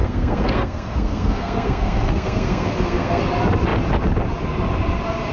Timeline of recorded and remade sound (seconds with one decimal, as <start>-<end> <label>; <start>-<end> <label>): 0.0-3.2 remade; 3.2-5.3 recorded